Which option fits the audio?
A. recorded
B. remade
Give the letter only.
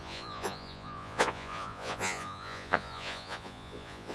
B